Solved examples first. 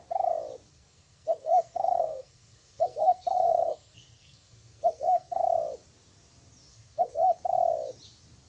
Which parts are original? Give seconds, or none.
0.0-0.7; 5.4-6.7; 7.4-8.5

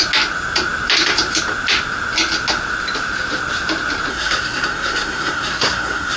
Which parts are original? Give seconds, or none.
0.0-4.1

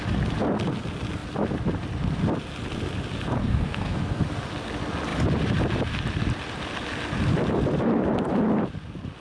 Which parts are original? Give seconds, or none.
0.0-3.4; 4.2-9.2

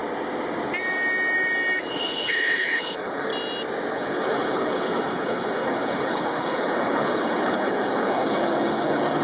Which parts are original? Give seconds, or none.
0.0-1.9; 3.3-3.9

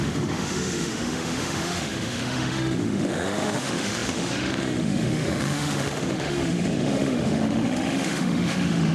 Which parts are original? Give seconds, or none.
none

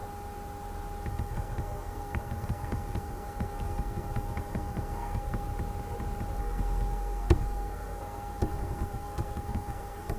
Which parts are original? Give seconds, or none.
0.0-1.1; 5.5-6.4

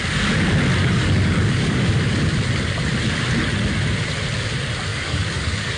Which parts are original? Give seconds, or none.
0.0-0.8; 1.9-4.9